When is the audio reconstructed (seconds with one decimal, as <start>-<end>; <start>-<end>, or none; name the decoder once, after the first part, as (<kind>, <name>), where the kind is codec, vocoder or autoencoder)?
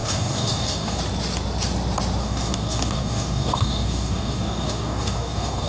0.0-1.0 (codec, DAC); 2.2-5.7